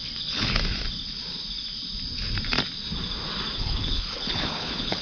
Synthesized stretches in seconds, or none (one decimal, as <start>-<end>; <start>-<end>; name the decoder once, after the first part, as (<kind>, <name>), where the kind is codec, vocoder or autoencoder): 0.0-0.6 (codec, HILCodec); 3.6-5.0